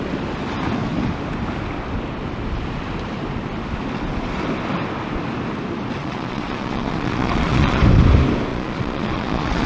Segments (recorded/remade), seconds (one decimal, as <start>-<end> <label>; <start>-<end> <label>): 0.0-6.0 recorded; 6.0-7.8 remade; 7.8-8.5 recorded; 8.5-9.7 remade